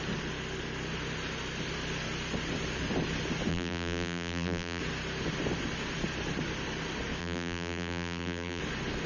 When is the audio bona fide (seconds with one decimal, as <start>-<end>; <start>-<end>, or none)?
0.0-3.5; 4.8-7.2; 8.6-9.1